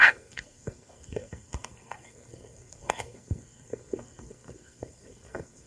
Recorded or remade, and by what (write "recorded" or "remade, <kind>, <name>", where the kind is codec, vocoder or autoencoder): remade, codec, SNAC